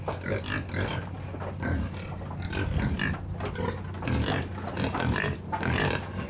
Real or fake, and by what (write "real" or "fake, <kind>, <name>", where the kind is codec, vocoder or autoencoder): real